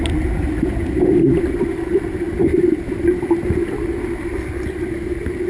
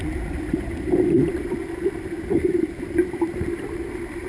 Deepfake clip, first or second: second